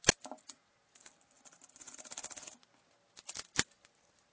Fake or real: real